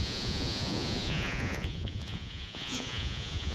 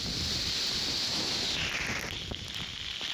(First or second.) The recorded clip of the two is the second